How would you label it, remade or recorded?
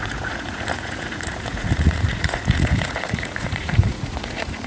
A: remade